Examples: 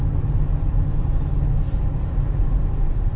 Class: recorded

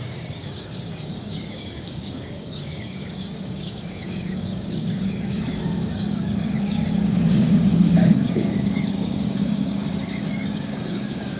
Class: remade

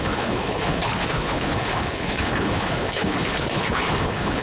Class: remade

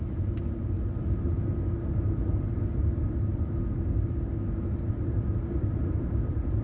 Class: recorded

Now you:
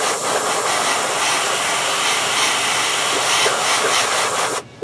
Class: recorded